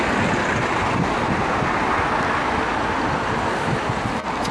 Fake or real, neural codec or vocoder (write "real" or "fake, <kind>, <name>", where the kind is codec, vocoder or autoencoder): real